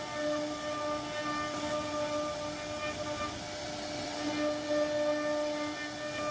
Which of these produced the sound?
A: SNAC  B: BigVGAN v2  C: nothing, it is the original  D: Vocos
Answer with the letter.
C